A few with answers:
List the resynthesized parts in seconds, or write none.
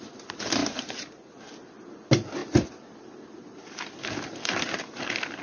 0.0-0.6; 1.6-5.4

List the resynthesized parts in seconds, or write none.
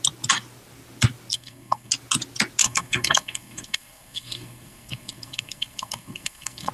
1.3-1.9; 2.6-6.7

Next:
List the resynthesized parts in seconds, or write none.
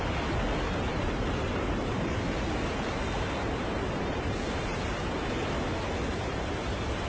0.9-5.2; 6.1-7.1